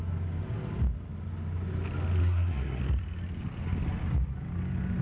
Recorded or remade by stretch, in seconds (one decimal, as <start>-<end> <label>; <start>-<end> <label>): 0.0-2.2 recorded; 2.2-2.8 remade; 2.8-5.0 recorded